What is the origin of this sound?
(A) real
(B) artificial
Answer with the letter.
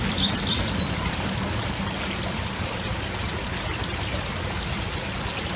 A